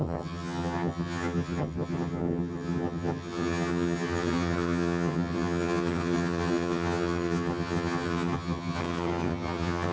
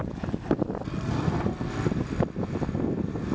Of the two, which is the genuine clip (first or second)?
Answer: second